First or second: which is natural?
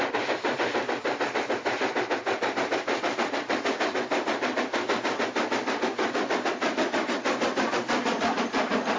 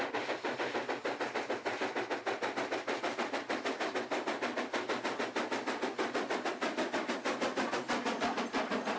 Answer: second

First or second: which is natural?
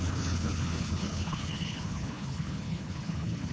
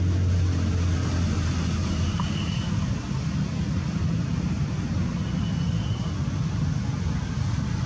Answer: second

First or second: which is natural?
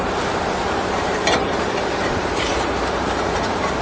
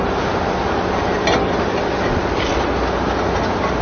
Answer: second